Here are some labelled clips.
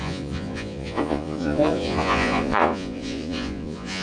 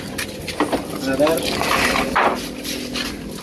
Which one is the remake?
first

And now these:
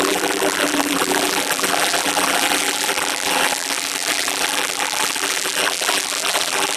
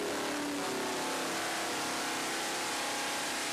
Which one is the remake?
first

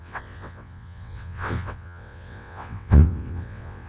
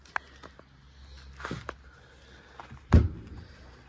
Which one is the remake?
first